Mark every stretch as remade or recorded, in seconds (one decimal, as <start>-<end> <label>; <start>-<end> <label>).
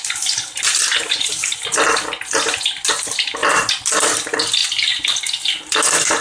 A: 0.0-6.2 recorded